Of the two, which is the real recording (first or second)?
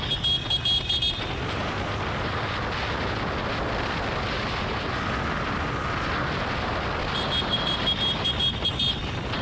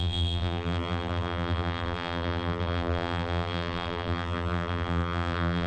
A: first